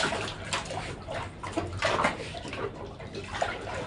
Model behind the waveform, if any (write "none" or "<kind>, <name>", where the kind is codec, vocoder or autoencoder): none